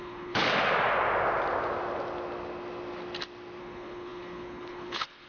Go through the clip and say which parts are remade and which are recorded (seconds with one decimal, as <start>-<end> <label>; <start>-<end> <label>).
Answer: 0.0-0.4 remade; 0.4-3.6 recorded; 3.6-5.3 remade